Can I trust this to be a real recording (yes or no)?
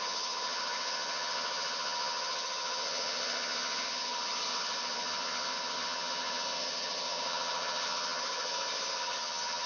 no